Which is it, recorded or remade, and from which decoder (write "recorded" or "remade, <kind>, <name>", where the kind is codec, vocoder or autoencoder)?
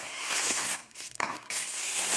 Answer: remade, codec, SNAC